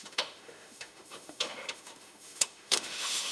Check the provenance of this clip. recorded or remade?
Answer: remade